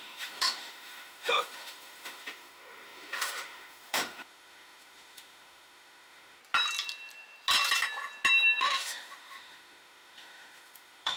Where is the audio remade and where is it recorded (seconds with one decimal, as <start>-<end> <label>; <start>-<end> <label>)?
0.0-6.4 remade; 6.4-8.6 recorded; 8.6-11.2 remade